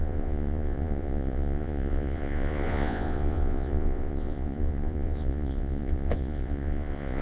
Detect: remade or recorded remade